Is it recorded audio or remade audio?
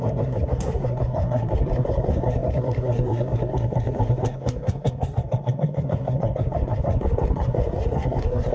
remade